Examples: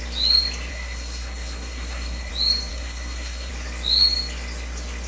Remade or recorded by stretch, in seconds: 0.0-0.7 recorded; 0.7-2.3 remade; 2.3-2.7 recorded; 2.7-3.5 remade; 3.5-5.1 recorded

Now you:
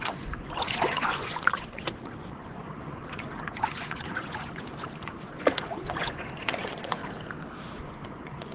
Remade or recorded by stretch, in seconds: 0.0-7.0 remade; 7.0-7.8 recorded; 7.8-8.5 remade

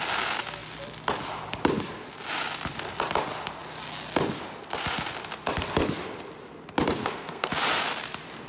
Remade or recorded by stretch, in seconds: 0.0-7.0 recorded; 7.0-7.5 remade; 7.5-8.5 recorded